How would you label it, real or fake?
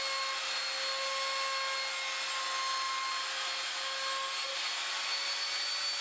real